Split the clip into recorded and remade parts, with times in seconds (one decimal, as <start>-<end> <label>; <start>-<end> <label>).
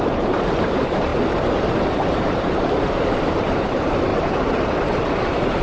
0.0-5.6 remade